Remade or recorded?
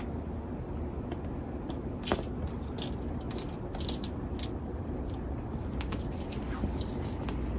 recorded